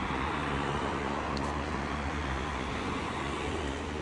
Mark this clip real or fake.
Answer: fake